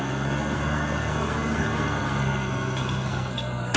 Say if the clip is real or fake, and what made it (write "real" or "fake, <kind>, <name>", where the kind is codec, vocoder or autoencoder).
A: fake, codec, SNAC